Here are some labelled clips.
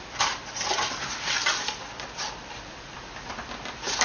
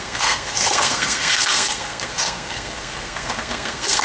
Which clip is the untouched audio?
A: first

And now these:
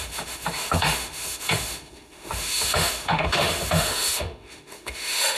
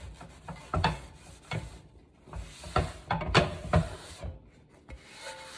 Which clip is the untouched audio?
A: second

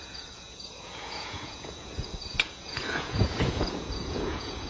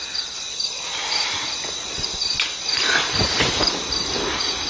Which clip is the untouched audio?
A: second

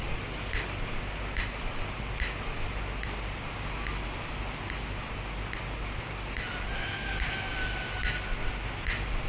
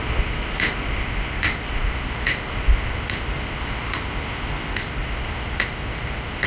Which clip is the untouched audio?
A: first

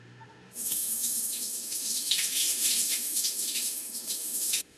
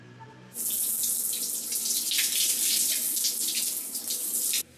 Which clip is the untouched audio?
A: second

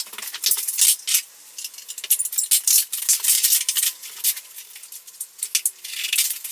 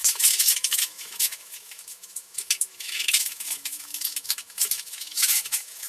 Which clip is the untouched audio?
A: first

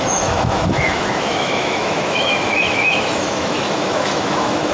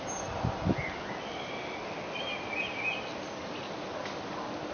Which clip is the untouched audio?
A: second